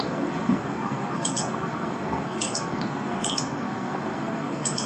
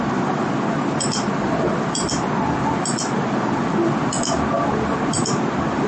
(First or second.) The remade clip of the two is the first